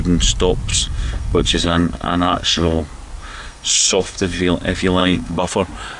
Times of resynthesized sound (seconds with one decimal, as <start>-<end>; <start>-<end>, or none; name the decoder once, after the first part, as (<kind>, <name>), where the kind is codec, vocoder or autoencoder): 0.7-2.8 (codec, SNAC); 3.2-4.4; 5.0-5.5